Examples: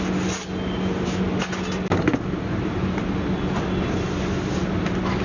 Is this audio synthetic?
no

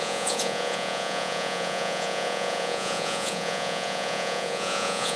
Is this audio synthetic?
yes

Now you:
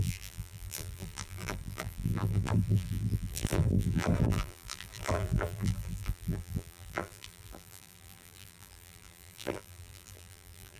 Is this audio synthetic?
yes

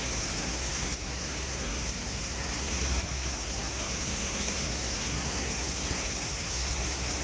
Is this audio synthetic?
yes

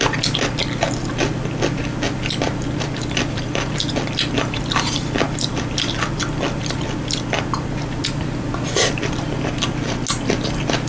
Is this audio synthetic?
no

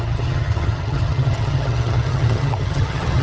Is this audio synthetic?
yes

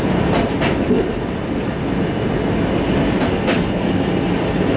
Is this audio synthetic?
no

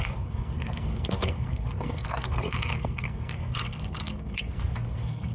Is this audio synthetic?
yes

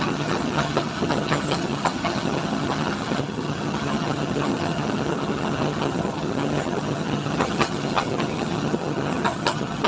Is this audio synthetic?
yes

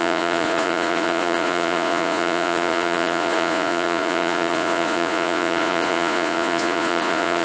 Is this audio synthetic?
yes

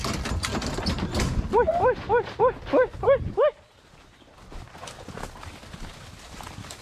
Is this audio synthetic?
no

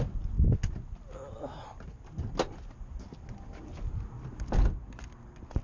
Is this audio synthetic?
no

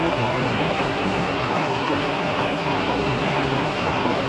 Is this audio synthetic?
yes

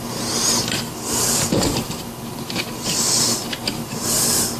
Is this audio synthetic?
yes